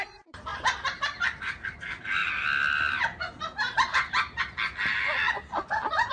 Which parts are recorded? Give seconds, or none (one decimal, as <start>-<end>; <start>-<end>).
0.5-1.4; 2.2-6.1